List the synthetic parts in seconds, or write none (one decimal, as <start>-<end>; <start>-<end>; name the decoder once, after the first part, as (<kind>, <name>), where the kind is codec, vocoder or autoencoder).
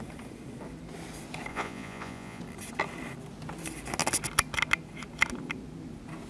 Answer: 1.5-2.4 (vocoder, Vocos)